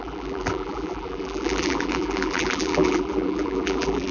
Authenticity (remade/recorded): remade